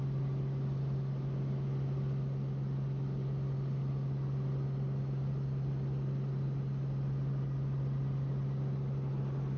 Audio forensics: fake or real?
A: real